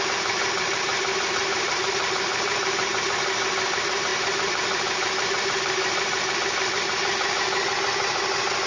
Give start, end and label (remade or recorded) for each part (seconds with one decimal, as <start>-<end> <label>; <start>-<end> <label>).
0.0-1.4 recorded; 1.4-2.6 remade; 2.6-4.1 recorded; 4.1-6.3 remade; 6.3-8.7 recorded